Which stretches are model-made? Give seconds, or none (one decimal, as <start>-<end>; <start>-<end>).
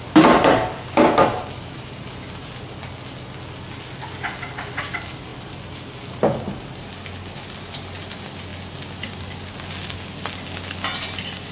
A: none